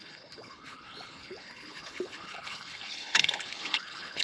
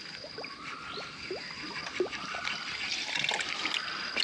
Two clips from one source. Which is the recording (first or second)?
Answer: second